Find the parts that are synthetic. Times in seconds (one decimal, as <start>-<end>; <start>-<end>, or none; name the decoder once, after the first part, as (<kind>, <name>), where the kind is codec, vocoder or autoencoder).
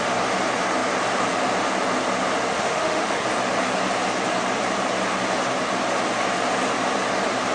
2.5-3.2 (autoencoder, DAC-VAE)